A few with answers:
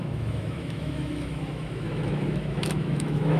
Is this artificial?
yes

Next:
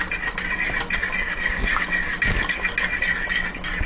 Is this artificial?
no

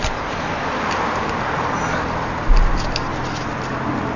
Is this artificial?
no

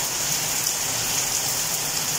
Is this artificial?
no